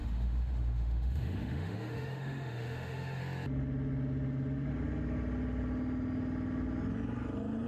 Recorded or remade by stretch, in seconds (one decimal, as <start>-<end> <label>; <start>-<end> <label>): 0.0-3.2 remade; 3.2-7.7 recorded